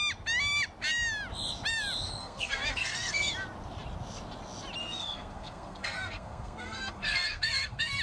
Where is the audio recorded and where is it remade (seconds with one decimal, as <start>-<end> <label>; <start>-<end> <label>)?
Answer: 0.0-2.2 recorded; 2.2-3.3 remade; 3.3-4.8 recorded; 4.8-8.0 remade